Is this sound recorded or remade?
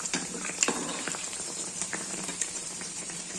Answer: remade